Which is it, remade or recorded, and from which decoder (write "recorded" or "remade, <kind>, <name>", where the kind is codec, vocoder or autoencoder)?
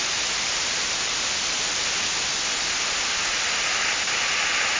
recorded